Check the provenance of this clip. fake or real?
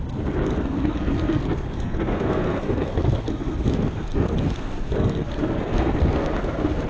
fake